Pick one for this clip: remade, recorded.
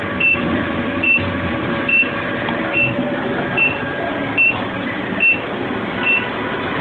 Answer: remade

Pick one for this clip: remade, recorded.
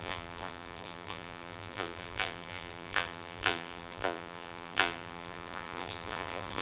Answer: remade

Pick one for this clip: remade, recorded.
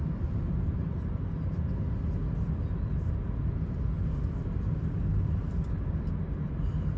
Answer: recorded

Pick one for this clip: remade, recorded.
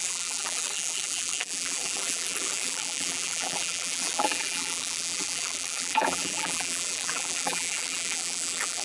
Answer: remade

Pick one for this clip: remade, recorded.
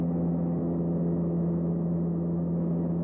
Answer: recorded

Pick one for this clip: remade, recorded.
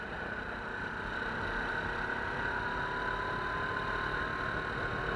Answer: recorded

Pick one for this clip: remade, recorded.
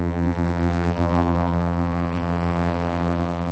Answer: remade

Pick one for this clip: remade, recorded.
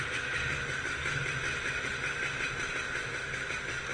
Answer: recorded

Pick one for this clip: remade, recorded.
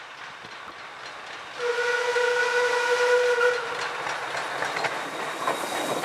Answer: recorded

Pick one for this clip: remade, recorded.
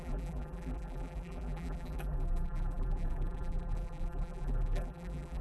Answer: remade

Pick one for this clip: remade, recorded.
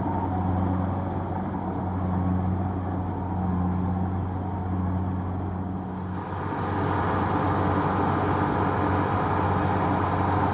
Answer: recorded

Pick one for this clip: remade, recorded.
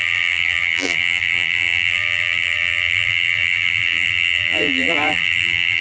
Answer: remade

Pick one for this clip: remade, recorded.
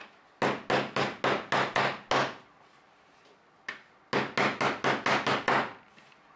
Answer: recorded